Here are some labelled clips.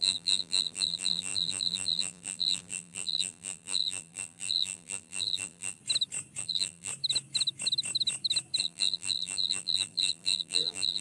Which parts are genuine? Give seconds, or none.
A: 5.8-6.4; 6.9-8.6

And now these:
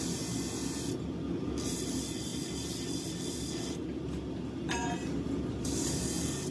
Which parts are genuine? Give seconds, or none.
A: 0.0-5.0; 6.0-6.5

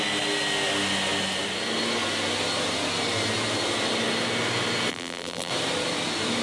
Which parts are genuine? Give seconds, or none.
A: 0.0-4.9; 5.5-6.4

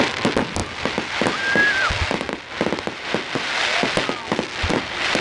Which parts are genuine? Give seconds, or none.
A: 0.0-5.2

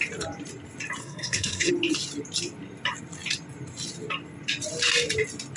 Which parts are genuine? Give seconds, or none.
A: 0.0-1.0; 1.7-5.6

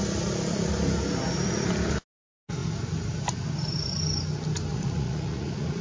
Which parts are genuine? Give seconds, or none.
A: 0.0-4.7